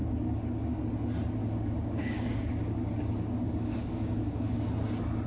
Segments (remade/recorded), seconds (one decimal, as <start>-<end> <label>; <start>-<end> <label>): 0.0-0.8 remade; 0.8-1.4 recorded; 1.4-4.6 remade; 4.6-5.3 recorded